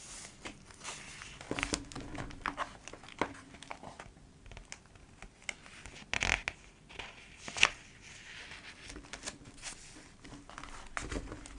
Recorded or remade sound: recorded